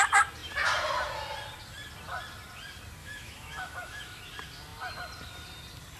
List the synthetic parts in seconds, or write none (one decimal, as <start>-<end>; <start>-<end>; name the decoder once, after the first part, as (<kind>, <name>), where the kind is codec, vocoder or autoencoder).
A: 3.0-4.2 (autoencoder, DAC-VAE)